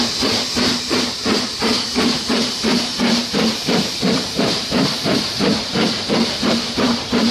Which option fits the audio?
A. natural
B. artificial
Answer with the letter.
B